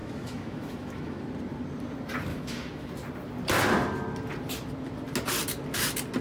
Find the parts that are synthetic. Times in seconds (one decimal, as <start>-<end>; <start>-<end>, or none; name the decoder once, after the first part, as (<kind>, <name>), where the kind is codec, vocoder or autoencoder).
0.0-1.2 (autoencoder, DAC-VAE); 2.3-2.9